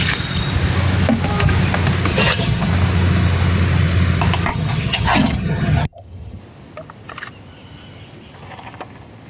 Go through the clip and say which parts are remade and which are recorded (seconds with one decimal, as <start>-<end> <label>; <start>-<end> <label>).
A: 0.0-2.1 recorded; 2.1-2.7 remade; 2.7-4.5 recorded; 4.5-6.4 remade; 6.4-9.3 recorded